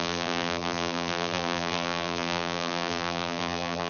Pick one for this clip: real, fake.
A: fake